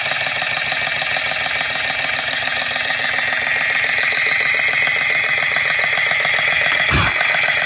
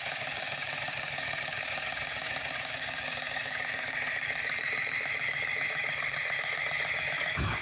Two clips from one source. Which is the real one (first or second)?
first